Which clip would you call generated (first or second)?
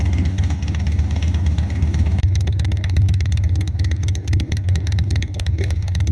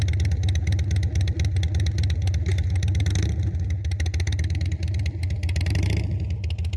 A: first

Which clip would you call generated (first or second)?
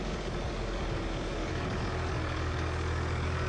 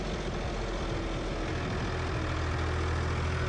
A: first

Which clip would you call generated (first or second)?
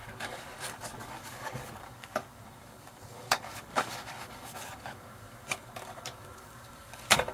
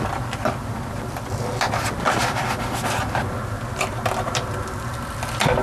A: first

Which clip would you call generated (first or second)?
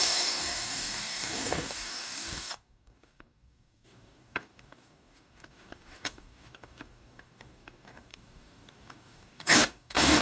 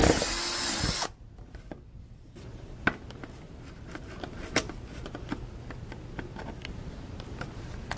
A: first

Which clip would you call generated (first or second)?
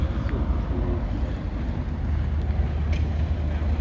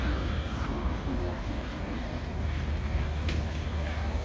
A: second